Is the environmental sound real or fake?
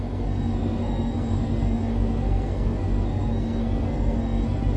fake